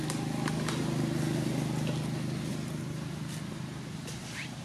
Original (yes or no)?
yes